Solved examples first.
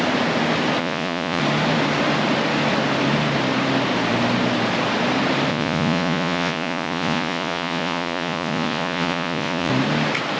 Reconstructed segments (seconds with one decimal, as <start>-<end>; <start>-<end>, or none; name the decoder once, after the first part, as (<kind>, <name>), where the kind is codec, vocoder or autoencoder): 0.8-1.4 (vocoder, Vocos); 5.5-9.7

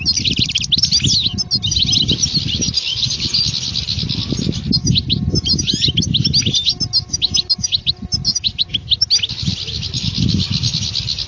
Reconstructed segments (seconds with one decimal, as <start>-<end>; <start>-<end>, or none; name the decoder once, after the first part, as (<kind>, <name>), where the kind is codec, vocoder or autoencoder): 2.9-3.4 (vocoder, Vocos)

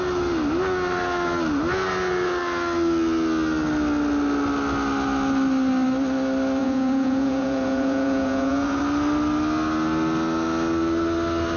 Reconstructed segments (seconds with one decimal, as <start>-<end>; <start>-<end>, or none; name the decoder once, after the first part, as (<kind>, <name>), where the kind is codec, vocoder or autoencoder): 6.6-8.8 (vocoder, Vocos)

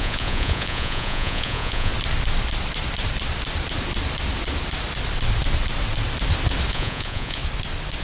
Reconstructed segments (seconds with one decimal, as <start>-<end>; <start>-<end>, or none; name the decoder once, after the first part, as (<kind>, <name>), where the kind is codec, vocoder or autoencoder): 0.0-1.9 (vocoder, Vocos); 6.7-7.4